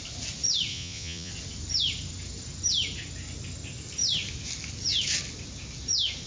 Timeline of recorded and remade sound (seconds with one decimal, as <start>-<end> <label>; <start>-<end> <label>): 0.0-0.7 recorded; 0.7-1.3 remade; 1.3-6.3 recorded

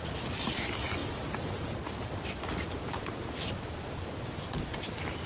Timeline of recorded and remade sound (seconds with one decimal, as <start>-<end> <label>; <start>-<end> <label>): 0.0-5.3 recorded